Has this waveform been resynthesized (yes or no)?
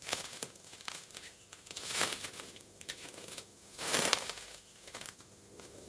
yes